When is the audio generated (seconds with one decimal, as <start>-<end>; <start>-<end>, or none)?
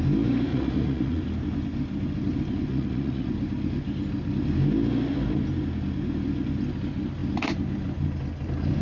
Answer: 0.5-1.2; 2.7-3.3